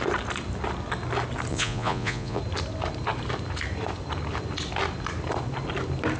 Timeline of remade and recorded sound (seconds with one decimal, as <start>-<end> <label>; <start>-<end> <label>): 0.0-1.5 recorded; 1.5-2.4 remade; 2.4-6.2 recorded